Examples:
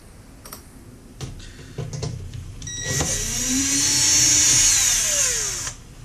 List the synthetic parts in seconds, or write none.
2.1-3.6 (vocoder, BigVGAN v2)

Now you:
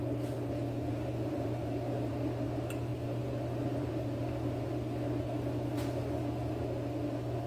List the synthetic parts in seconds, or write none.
0.9-2.1 (vocoder, BigVGAN v2); 2.9-3.9